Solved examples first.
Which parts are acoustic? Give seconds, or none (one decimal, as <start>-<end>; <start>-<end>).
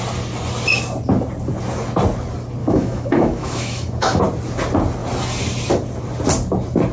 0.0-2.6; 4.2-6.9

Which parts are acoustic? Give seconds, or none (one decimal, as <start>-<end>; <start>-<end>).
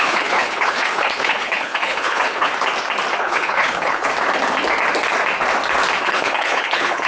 2.5-3.2; 4.1-6.0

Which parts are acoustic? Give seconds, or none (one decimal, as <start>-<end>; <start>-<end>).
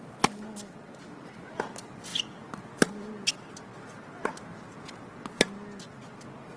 0.0-6.6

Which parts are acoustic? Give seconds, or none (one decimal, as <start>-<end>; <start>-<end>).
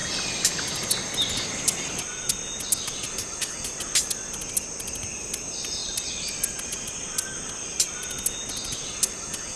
0.0-9.6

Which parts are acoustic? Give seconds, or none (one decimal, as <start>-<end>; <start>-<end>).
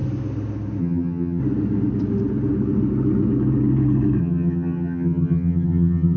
0.0-0.8; 1.4-4.2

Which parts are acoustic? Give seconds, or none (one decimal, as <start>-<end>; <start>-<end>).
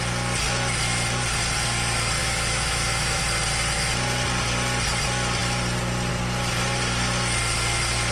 0.0-2.2; 3.2-8.1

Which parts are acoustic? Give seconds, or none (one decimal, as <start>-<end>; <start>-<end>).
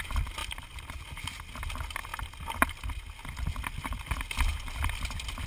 0.0-5.5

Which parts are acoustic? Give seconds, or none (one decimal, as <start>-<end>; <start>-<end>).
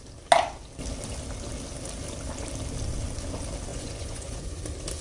0.0-3.7; 4.6-5.0